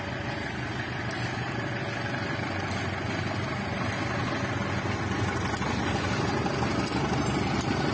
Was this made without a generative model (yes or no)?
yes